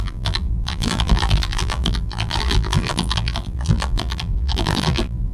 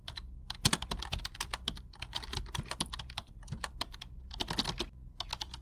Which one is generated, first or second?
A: first